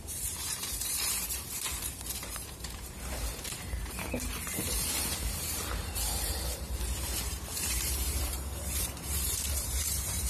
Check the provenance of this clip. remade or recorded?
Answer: remade